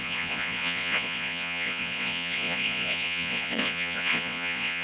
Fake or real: fake